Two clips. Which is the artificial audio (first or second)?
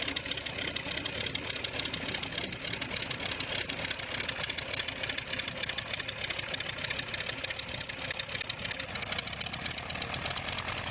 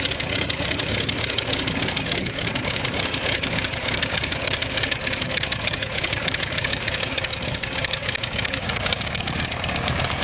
second